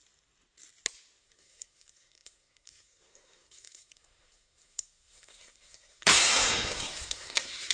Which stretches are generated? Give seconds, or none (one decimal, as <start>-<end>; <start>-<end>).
1.2-7.7